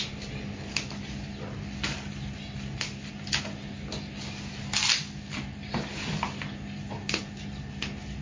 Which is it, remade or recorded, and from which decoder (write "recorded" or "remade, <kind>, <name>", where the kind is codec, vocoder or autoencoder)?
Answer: recorded